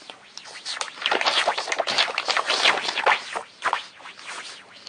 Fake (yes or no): no